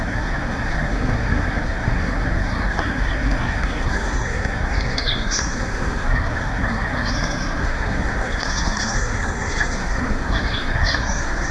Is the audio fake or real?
fake